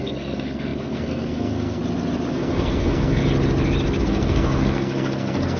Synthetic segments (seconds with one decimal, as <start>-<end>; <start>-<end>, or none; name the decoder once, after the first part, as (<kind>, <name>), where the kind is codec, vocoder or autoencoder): 0.0-1.8 (codec, SNAC); 2.3-3.2; 4.0-5.6